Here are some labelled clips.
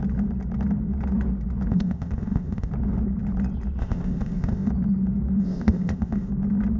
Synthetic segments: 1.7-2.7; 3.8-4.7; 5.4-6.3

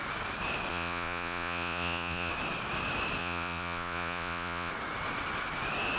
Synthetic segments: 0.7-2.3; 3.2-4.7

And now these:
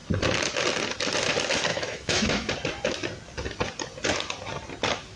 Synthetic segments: 1.7-2.5

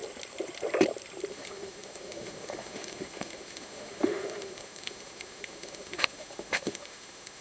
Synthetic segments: 1.3-7.4

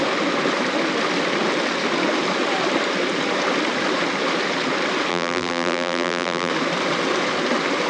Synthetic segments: 5.1-6.5

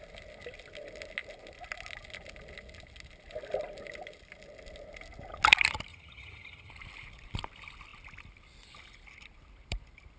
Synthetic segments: 5.9-6.7

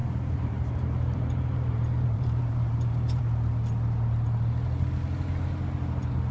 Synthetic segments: 0.0-3.2

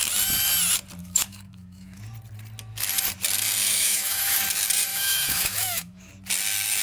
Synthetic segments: 1.0-2.0; 3.6-4.4; 4.9-6.1